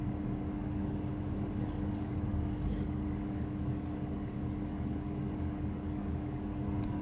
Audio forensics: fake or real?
fake